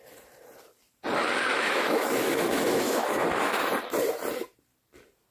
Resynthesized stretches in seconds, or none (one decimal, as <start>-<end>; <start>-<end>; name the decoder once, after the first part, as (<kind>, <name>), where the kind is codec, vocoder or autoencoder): 1.5-3.6 (autoencoder, DAC-VAE)